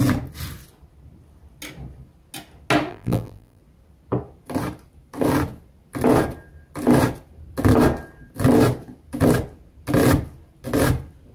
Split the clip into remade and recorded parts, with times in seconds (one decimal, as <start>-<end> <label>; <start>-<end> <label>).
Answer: 0.0-2.9 recorded; 2.9-3.6 remade; 3.6-11.3 recorded